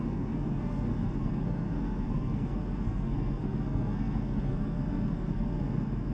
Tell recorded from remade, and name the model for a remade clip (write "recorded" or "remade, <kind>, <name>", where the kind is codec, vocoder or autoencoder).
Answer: remade, codec, SNAC